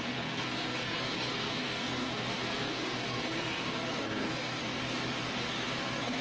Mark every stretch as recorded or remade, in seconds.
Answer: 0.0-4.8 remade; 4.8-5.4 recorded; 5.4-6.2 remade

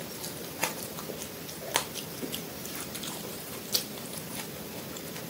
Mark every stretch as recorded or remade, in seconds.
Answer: 0.0-0.6 recorded; 0.6-1.1 remade; 1.1-2.6 recorded; 2.6-3.7 remade; 3.7-5.3 recorded

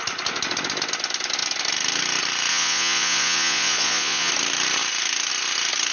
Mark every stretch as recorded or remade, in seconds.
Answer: 0.0-2.5 recorded; 2.5-4.3 remade; 4.3-5.9 recorded

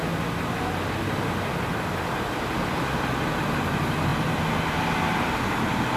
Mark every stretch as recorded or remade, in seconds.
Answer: 0.0-6.0 recorded

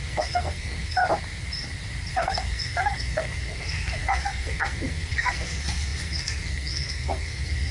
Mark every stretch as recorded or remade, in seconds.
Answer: 0.0-1.0 remade; 1.0-2.1 recorded; 2.1-7.7 remade

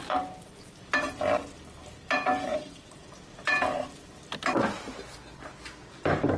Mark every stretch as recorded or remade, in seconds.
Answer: 0.0-2.5 recorded; 2.5-3.1 remade; 3.1-6.4 recorded

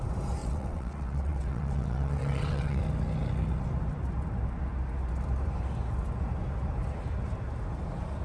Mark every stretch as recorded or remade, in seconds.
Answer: 0.0-0.4 recorded; 0.4-2.8 remade; 2.8-8.2 recorded

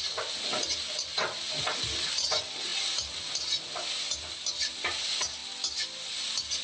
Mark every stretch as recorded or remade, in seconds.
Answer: 0.0-6.6 recorded